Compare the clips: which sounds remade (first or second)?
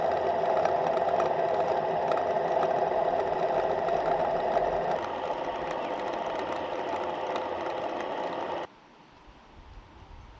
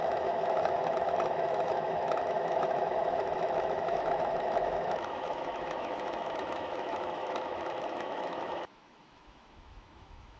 second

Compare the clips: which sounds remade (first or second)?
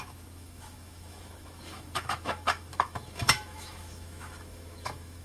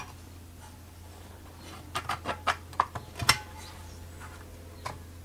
first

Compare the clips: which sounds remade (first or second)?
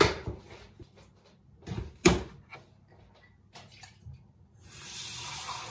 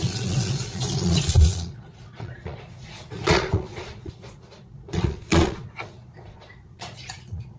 second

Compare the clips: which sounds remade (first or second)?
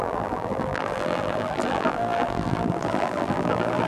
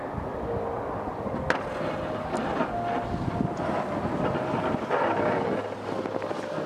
first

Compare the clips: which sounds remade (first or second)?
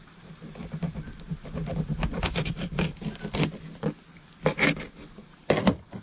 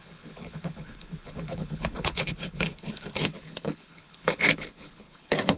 second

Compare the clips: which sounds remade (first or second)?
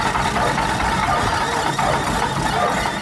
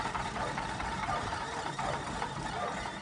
second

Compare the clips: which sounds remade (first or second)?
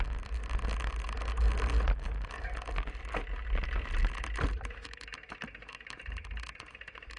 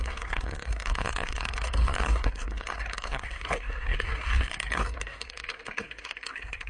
second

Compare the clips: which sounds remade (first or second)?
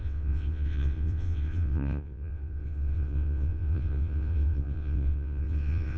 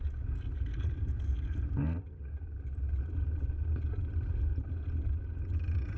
first